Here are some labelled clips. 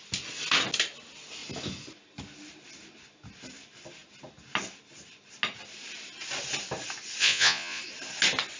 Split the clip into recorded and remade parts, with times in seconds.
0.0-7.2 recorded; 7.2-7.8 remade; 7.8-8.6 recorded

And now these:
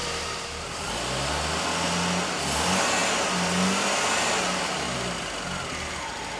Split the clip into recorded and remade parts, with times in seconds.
0.0-0.9 remade; 0.9-6.4 recorded

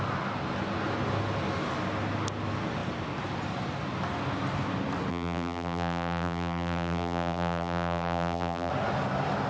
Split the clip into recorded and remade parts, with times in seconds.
0.0-5.1 recorded; 5.1-8.7 remade; 8.7-9.5 recorded

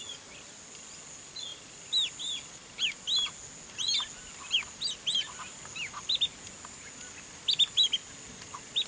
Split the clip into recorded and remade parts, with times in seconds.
0.0-8.9 recorded

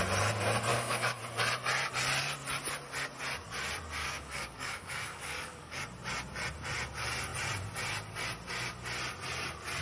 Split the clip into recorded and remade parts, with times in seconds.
0.0-0.7 recorded; 0.7-1.2 remade; 1.2-4.0 recorded; 4.0-5.8 remade; 5.8-9.8 recorded

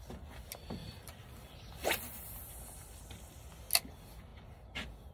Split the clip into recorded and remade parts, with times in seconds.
0.0-5.1 recorded

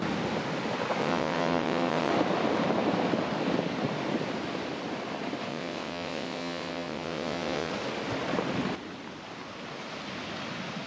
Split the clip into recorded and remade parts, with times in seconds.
0.0-1.0 recorded; 1.0-2.1 remade; 2.1-5.5 recorded; 5.5-7.7 remade; 7.7-10.9 recorded